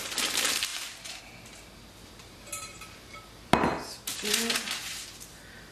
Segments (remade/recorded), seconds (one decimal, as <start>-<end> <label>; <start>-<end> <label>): 0.0-2.2 recorded; 2.2-3.1 remade; 3.1-5.7 recorded

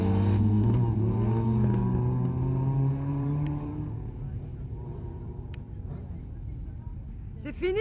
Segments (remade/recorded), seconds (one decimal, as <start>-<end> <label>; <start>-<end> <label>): 0.0-3.1 recorded; 3.1-3.7 remade; 3.7-4.5 recorded; 4.5-6.2 remade; 6.2-7.8 recorded

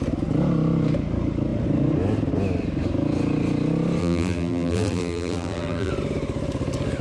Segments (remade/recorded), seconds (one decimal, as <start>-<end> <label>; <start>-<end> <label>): 0.0-4.0 recorded; 4.0-5.9 remade; 5.9-7.0 recorded

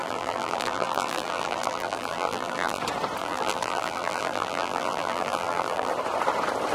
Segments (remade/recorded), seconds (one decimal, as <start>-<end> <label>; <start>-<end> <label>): 0.0-2.8 remade; 2.8-3.2 recorded; 3.2-5.9 remade; 5.9-6.7 recorded

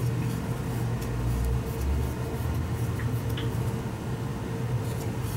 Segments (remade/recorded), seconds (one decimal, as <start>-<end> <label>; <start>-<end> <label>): 0.0-5.4 recorded

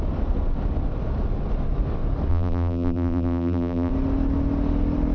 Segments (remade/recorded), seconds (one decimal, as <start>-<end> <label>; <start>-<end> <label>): 0.0-2.3 recorded; 2.3-3.9 remade; 3.9-5.1 recorded